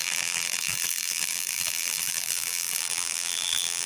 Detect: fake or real fake